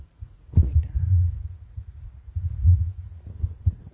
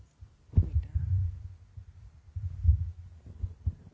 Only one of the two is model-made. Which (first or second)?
first